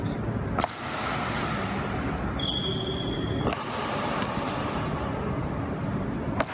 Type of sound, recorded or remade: recorded